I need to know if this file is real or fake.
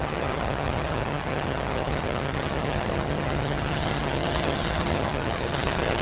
fake